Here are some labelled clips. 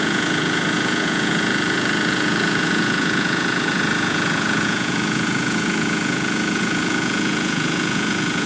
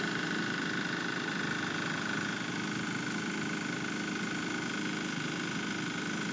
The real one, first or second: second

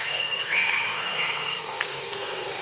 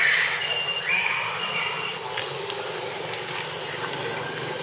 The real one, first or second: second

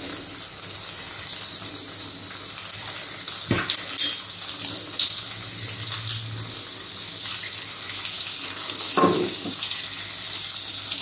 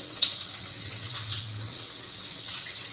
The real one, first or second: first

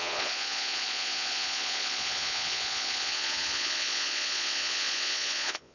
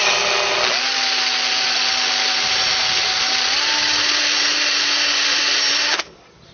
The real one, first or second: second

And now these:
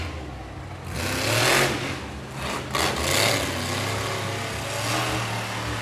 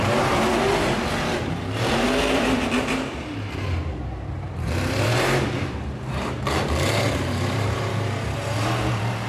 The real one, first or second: first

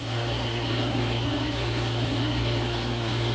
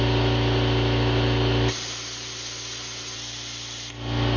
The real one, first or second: second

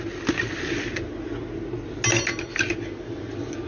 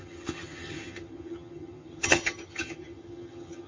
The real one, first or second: first